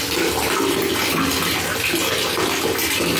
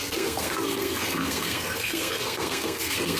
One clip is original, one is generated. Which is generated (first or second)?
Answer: second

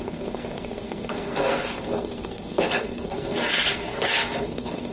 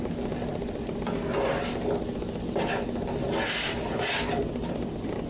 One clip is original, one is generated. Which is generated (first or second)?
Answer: first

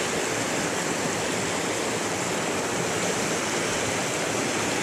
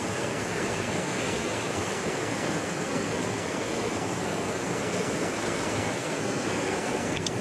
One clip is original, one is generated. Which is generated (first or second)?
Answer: second